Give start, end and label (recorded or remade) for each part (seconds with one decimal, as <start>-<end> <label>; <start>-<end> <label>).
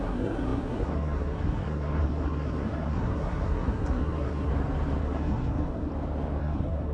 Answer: 0.0-4.5 remade; 4.5-5.0 recorded; 5.0-5.9 remade; 5.9-6.4 recorded; 6.4-6.9 remade